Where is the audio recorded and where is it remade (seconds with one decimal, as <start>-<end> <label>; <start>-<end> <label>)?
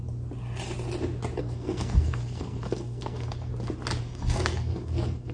0.0-1.4 recorded; 1.4-3.5 remade; 3.5-4.0 recorded; 4.0-5.3 remade